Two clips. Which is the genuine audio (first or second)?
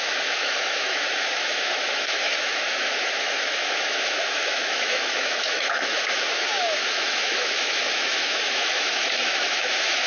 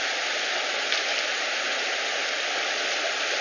second